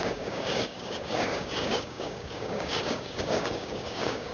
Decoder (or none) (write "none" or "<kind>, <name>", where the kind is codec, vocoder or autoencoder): codec, DAC